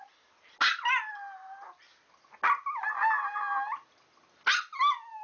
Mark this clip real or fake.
real